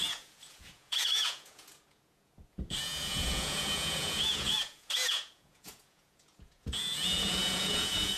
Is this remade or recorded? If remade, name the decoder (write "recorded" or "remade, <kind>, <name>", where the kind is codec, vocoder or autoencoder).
remade, vocoder, Vocos